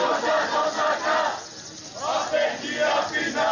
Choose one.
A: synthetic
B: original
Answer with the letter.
B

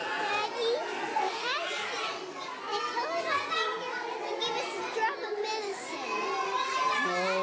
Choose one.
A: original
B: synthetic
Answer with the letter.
A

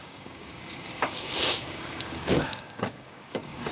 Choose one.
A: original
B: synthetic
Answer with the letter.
B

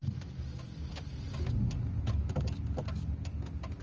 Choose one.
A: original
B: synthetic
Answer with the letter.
A